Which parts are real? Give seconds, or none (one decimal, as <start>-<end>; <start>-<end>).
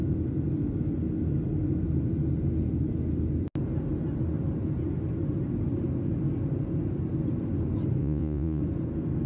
0.0-8.0; 8.6-9.3